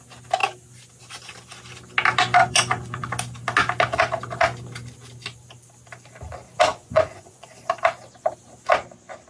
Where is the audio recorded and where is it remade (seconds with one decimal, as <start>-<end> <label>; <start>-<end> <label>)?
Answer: 0.0-2.4 recorded; 2.4-3.1 remade; 3.1-6.7 recorded; 6.7-7.5 remade; 7.5-9.3 recorded